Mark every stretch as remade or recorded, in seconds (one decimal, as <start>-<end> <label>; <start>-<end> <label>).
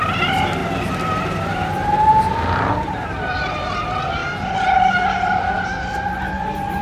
0.0-0.6 remade; 0.6-2.7 recorded; 2.7-4.2 remade; 4.2-6.1 recorded; 6.1-6.8 remade